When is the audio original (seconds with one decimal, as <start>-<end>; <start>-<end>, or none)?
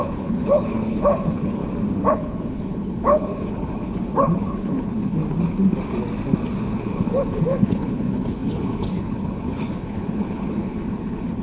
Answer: 1.6-2.1; 5.2-6.6